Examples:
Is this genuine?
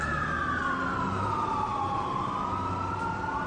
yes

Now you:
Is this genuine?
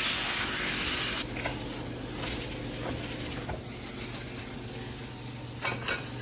yes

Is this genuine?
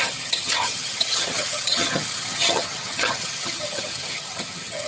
no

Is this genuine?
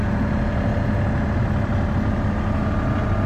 yes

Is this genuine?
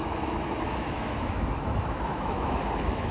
no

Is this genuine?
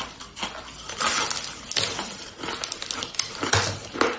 yes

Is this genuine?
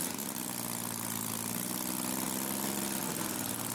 yes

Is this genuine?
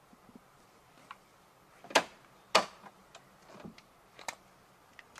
yes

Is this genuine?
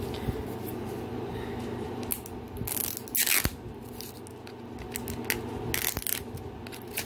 yes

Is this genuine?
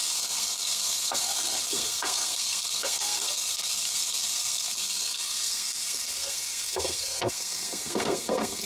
no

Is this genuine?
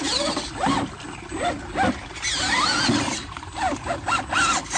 yes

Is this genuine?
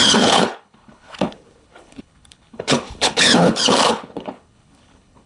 no